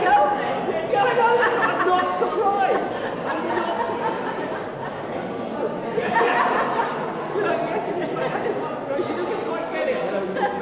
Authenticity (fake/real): real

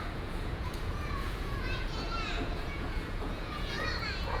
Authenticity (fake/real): fake